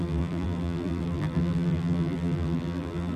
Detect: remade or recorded remade